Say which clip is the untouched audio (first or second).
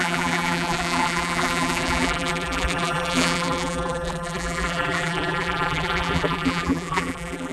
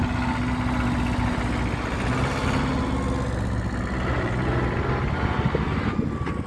second